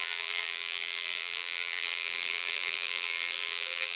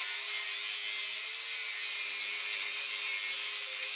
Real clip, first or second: second